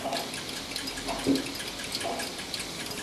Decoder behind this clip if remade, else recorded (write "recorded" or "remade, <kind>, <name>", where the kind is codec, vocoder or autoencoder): recorded